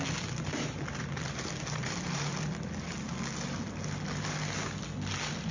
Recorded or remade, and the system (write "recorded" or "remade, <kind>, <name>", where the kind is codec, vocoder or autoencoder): recorded